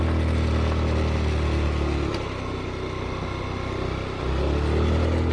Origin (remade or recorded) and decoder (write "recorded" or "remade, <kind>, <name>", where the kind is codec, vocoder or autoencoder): recorded